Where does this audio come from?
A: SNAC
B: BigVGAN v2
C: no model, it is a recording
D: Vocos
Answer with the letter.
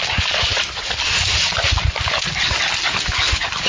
C